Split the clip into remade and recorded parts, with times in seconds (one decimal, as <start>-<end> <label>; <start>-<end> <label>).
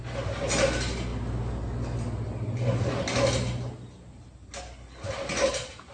0.0-5.9 recorded